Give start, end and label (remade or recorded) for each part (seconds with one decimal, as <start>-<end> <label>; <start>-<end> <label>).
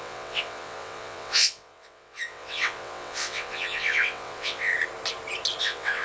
0.0-4.7 remade; 4.7-5.6 recorded; 5.6-6.0 remade